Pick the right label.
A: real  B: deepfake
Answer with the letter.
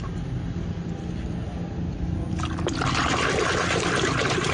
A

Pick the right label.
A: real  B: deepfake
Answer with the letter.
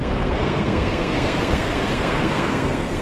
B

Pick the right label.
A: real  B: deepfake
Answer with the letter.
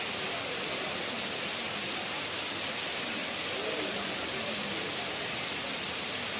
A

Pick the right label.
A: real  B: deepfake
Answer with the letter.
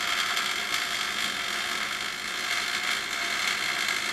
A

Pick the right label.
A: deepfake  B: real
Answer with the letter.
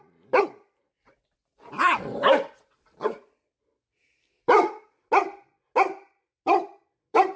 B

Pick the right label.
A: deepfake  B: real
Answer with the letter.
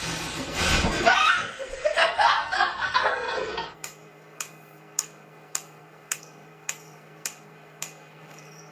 A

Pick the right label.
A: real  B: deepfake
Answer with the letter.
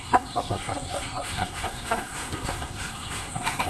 B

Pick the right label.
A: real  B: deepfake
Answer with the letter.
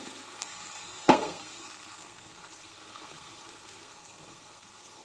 B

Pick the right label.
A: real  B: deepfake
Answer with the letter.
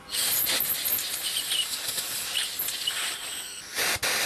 A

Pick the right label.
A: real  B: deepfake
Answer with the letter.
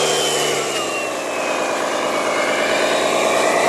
A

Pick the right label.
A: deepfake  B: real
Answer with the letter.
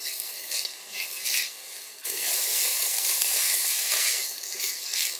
A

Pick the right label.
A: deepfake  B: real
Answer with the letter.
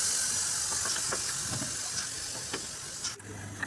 B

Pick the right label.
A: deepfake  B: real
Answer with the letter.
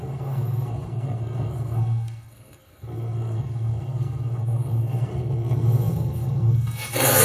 A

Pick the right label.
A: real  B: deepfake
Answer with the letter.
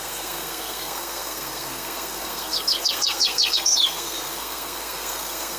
B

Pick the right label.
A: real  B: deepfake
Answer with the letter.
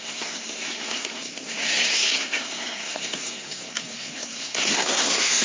B